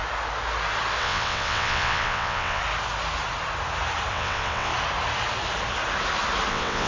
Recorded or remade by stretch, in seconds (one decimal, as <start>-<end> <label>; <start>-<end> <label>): 0.0-1.0 recorded; 1.0-2.6 remade; 2.6-4.1 recorded; 4.1-4.7 remade; 4.7-6.5 recorded; 6.5-6.9 remade